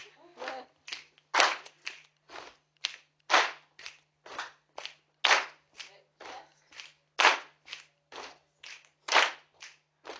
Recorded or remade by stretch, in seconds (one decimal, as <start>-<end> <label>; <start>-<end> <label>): 0.0-10.2 recorded